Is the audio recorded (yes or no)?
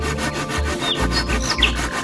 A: yes